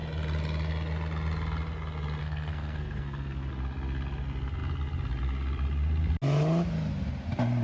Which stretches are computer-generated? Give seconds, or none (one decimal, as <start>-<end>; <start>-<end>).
2.2-3.5